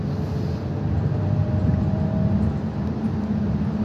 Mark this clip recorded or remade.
recorded